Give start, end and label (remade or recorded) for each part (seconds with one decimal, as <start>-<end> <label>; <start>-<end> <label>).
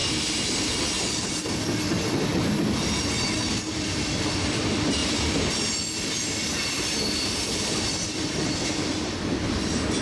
0.0-5.0 recorded; 5.0-8.7 remade; 8.7-10.0 recorded